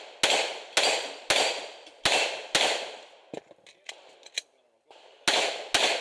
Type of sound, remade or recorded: recorded